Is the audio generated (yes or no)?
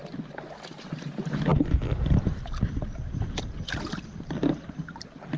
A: no